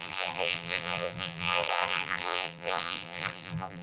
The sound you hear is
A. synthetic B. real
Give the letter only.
A